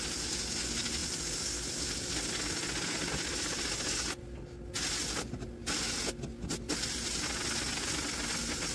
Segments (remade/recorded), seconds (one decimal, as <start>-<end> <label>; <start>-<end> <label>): 0.0-8.7 recorded